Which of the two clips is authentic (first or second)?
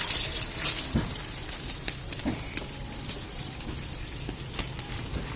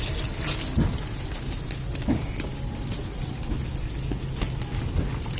second